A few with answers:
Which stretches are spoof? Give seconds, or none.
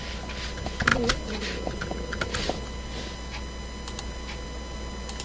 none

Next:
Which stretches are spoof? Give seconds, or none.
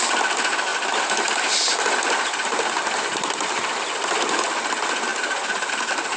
none